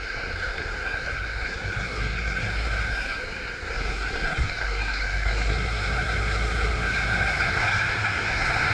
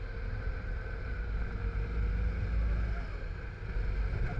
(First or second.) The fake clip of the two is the first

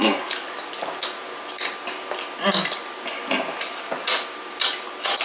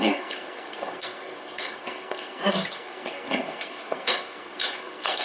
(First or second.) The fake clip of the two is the second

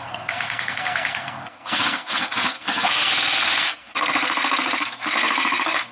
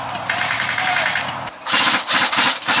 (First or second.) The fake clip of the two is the first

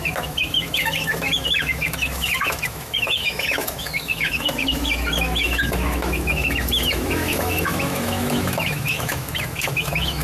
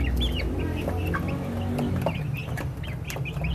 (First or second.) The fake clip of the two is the first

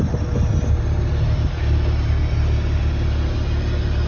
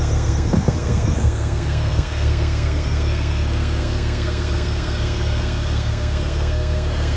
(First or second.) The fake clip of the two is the second